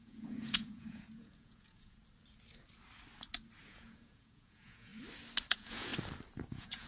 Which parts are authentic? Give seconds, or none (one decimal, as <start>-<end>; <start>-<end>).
2.0-3.6; 4.9-5.5; 5.9-6.5